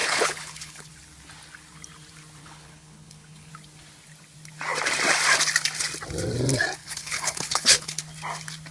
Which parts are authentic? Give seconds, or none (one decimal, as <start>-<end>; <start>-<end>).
0.9-2.4; 3.5-6.8; 8.0-8.7